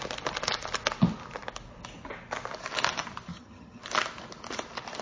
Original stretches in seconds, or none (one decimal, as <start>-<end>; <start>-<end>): 0.0-3.3; 3.8-5.0